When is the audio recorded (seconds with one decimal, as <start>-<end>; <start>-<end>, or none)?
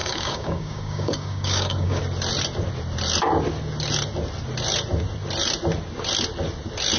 2.0-7.0